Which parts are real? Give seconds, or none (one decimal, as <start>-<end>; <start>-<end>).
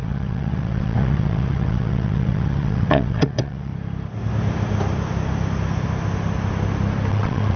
3.7-7.1